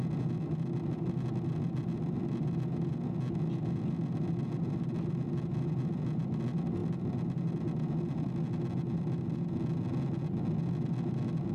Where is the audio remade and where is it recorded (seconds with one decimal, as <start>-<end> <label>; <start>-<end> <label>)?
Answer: 0.0-11.5 recorded